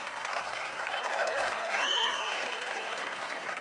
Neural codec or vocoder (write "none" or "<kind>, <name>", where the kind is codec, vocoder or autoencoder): codec, SNAC